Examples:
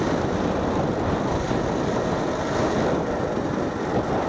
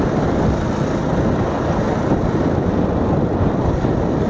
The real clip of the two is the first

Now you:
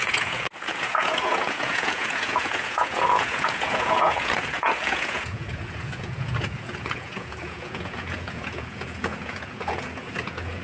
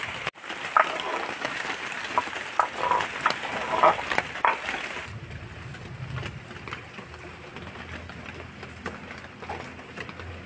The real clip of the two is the second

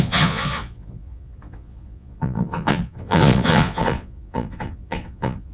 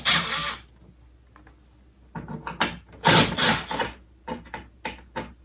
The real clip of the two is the second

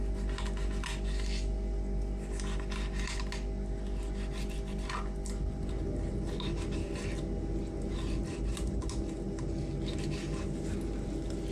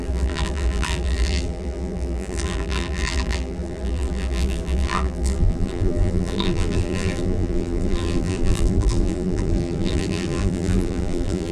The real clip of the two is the first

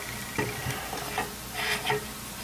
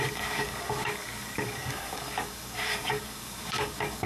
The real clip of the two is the first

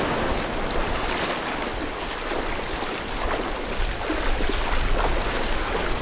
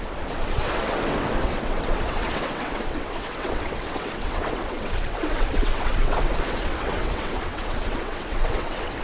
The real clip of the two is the first